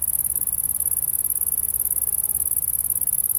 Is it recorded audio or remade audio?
recorded